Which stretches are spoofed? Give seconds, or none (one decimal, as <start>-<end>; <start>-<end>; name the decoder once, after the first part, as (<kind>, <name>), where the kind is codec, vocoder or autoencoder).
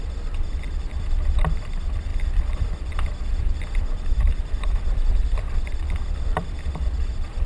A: 2.1-6.6 (vocoder, BigVGAN v2)